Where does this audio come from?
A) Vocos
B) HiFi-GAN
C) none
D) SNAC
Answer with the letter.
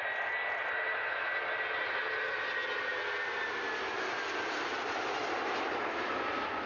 C